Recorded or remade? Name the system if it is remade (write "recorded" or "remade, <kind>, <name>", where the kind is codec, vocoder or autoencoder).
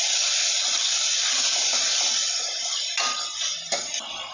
recorded